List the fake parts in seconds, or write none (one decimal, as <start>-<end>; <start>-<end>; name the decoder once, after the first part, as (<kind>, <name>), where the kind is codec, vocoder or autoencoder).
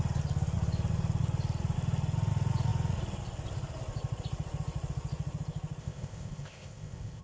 5.8-7.2 (codec, ZipCodec)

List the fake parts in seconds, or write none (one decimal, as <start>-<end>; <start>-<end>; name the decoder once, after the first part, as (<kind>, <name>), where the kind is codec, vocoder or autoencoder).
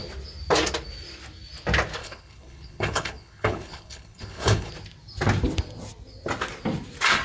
2.0-4.7 (codec, HILCodec)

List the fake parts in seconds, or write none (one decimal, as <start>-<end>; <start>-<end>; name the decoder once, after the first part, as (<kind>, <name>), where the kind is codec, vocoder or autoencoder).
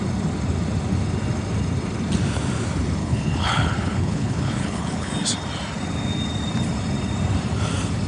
3.0-5.1 (codec, HILCodec)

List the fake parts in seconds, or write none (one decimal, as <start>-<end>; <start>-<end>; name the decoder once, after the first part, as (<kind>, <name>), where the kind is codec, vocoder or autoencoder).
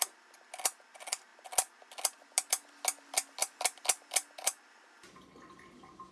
none